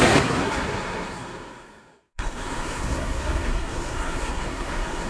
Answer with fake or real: fake